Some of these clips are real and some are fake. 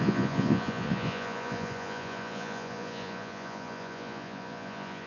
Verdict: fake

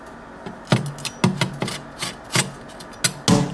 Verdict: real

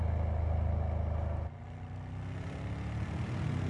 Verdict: real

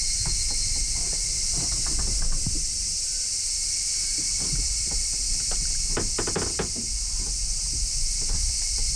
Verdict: real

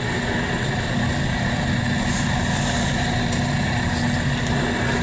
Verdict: real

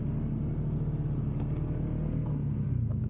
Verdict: real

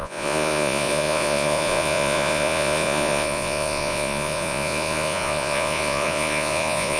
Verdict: fake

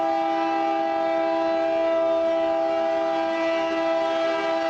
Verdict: real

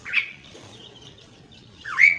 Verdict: fake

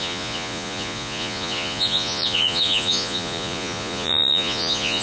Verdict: fake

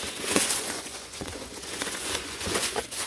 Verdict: fake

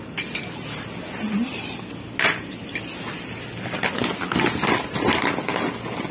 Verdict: real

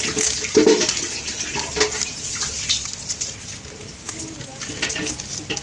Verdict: real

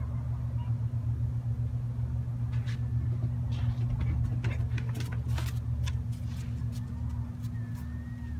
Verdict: real